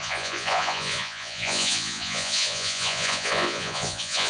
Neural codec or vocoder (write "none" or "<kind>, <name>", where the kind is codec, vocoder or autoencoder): vocoder, Vocos